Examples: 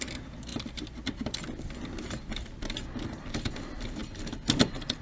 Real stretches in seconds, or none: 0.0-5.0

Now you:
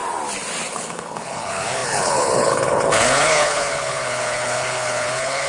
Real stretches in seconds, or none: 0.0-0.7

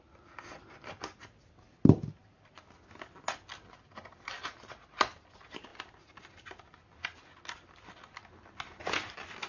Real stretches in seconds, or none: 0.0-9.5

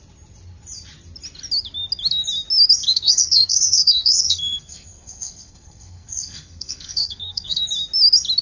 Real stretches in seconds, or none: 0.0-2.8; 7.6-8.4

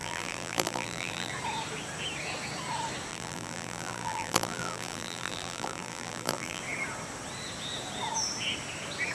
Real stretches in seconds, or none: 1.3-3.1; 6.6-9.1

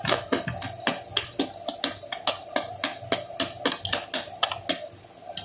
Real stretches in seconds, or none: 0.0-5.4

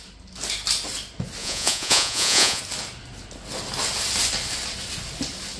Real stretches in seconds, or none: 0.0-1.4; 2.6-5.6